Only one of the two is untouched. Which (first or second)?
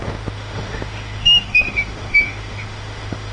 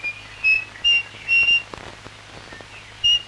second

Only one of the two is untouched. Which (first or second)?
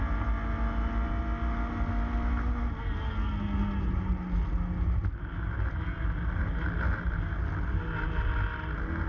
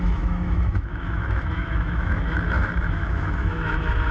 first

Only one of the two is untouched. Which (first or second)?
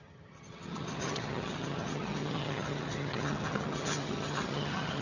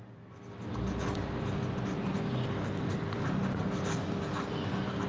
second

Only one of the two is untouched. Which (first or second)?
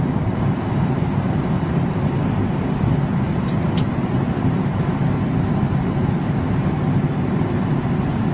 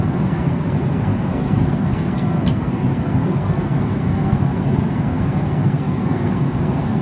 first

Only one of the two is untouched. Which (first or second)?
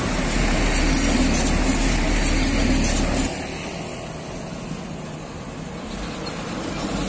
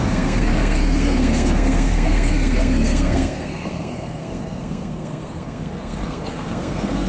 first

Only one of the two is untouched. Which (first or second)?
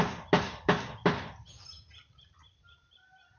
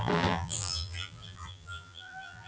first